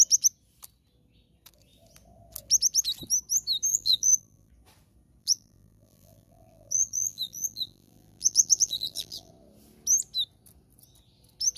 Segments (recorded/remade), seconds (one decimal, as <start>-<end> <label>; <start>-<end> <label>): 0.0-3.7 recorded; 3.7-4.5 remade; 4.5-5.2 recorded; 5.2-9.3 remade; 9.3-11.6 recorded